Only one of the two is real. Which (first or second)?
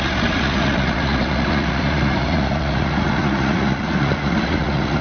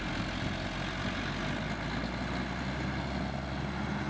second